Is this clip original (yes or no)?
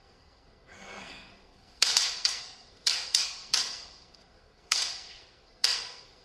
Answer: no